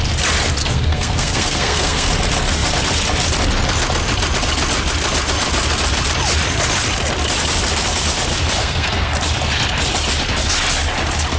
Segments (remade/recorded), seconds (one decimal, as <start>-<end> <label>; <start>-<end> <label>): 0.0-0.6 recorded; 0.6-2.1 remade; 2.1-8.6 recorded; 8.6-9.1 remade; 9.1-11.4 recorded